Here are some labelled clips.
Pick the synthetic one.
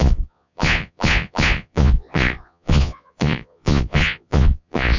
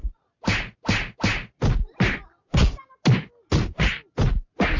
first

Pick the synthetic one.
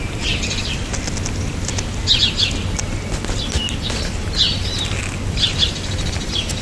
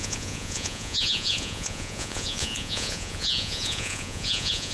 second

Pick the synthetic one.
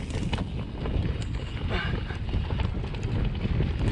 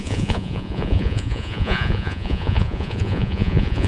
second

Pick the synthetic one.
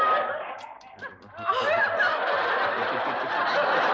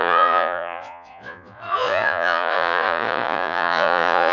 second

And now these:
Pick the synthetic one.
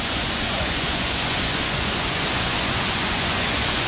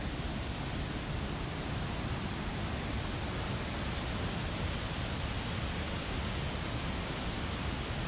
first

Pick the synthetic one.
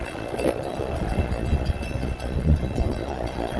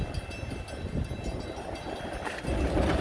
first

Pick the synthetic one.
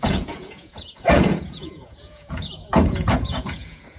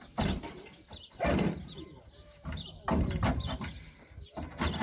first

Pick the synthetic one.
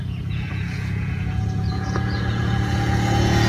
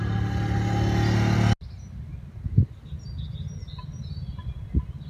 first